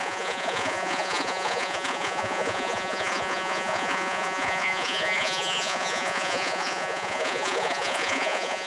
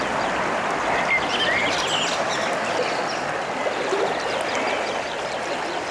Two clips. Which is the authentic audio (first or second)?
second